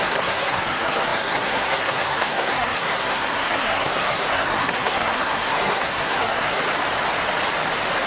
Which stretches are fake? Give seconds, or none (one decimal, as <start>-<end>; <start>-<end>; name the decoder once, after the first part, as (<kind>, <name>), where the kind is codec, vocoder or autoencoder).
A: 0.0-6.6 (codec, SNAC)